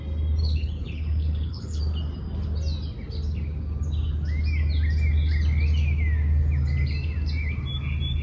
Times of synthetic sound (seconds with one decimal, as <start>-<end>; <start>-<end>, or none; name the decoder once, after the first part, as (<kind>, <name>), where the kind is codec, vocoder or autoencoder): 0.4-1.8 (codec, HILCodec)